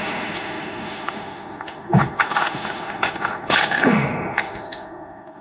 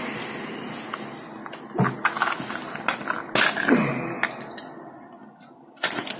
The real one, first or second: second